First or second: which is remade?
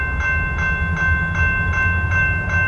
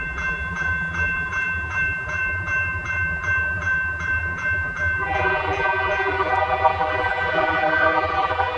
second